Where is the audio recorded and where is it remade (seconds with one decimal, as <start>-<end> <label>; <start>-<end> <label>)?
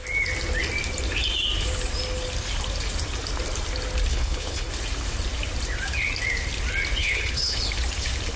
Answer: 0.0-4.1 recorded; 4.1-4.7 remade; 4.7-7.0 recorded; 7.0-7.6 remade; 7.6-8.4 recorded